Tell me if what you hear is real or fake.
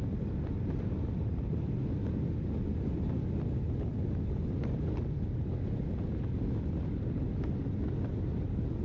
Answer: real